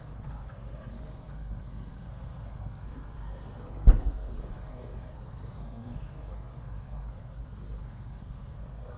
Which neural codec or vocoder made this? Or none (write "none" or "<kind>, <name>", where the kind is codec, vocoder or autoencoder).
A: codec, SNAC